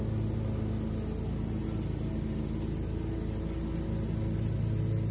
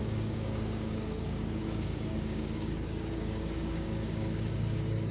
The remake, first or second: second